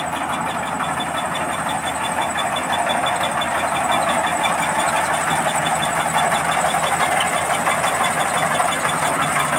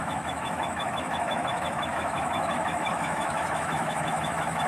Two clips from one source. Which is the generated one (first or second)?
second